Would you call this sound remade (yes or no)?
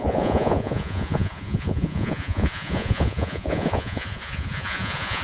yes